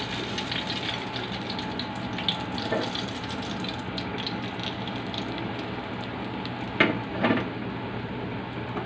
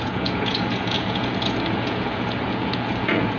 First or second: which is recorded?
first